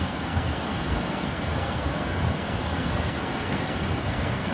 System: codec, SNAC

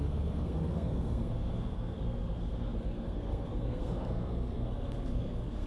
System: codec, SNAC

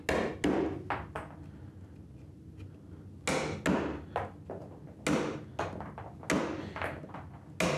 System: none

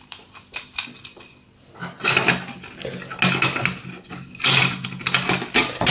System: none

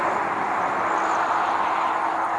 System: none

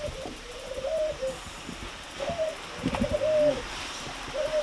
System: vocoder, BigVGAN v2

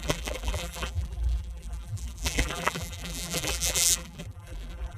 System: vocoder, BigVGAN v2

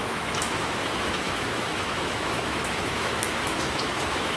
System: autoencoder, DAC-VAE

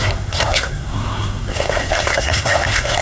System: codec, SNAC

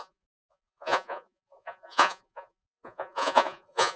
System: vocoder, Vocos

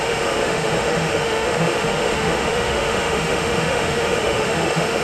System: autoencoder, DAC-VAE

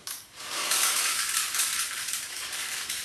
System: codec, DAC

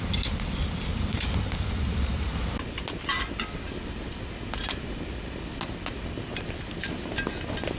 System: none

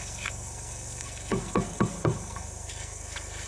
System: codec, SNAC